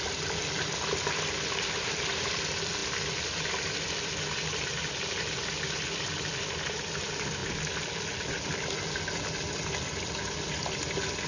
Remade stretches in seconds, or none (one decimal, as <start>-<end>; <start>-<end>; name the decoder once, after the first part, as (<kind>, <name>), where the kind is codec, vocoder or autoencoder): none